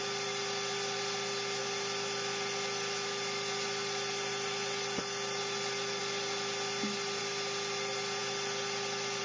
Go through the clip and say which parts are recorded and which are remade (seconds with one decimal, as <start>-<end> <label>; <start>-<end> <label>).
0.0-9.2 recorded